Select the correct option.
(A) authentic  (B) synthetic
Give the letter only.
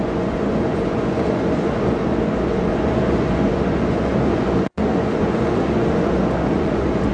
B